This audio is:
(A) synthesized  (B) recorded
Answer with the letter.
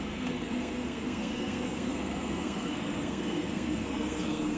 A